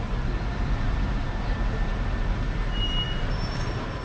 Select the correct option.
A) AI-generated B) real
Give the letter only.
B